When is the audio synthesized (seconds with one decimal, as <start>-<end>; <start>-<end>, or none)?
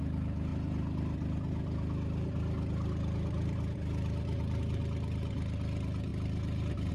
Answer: none